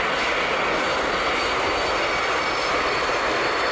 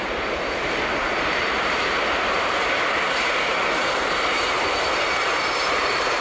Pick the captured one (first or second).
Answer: first